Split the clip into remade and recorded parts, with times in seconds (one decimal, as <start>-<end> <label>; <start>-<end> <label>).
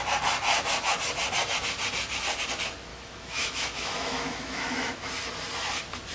0.0-2.9 recorded; 2.9-5.1 remade; 5.1-6.1 recorded